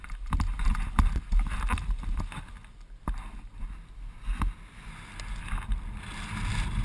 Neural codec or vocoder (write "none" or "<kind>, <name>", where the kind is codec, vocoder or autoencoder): none